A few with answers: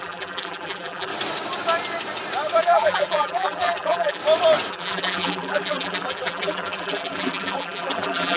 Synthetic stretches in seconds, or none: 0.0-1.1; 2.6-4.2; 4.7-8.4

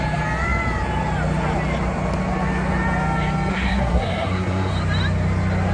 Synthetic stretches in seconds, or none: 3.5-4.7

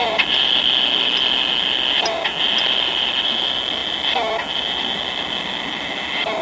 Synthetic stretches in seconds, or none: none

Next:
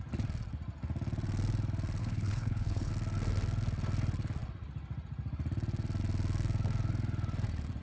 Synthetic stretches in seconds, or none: 2.0-2.9

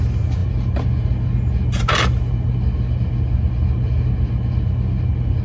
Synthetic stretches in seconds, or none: none

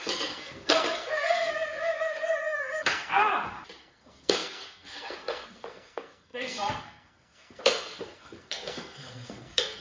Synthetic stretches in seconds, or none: 0.0-3.3; 3.8-9.8

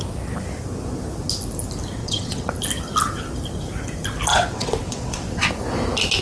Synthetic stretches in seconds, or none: 2.0-2.5; 4.3-5.5